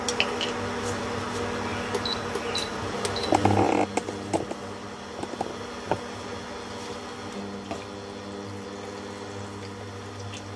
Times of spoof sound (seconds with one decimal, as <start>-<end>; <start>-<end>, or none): none